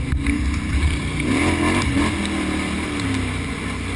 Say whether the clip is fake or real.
real